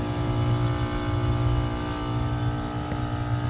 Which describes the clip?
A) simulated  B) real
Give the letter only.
B